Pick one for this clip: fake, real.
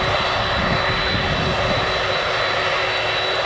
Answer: real